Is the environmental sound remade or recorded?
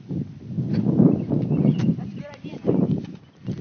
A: recorded